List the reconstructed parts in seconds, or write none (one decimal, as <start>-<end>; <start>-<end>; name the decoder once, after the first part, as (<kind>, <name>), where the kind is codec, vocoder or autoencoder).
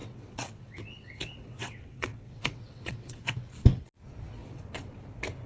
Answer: 0.0-3.3 (vocoder, WaveNeXt); 4.4-5.0